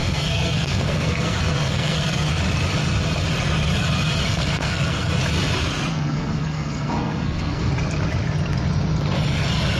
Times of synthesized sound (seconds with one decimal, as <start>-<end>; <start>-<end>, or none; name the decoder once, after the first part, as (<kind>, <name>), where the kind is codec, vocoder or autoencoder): 0.0-2.4 (codec, SNAC); 4.3-5.1; 5.9-7.7